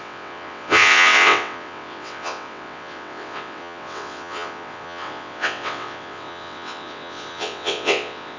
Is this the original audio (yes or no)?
no